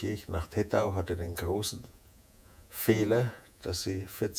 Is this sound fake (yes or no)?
yes